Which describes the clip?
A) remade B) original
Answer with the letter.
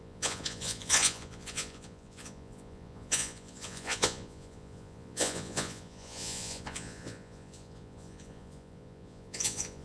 A